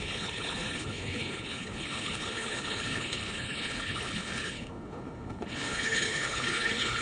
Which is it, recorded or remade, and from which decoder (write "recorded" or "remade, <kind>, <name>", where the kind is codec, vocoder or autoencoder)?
remade, codec, HILCodec